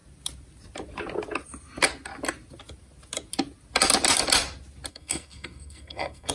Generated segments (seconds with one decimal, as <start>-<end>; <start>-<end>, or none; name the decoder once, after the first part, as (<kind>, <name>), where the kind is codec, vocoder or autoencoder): 4.9-6.3 (codec, SNAC)